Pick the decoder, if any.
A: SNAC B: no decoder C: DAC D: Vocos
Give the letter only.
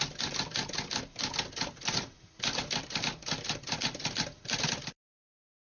B